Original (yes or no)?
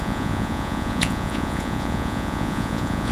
no